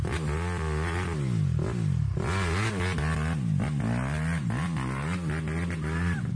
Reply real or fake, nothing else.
real